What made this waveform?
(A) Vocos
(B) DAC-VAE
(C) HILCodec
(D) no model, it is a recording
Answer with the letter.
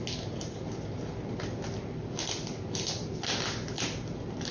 D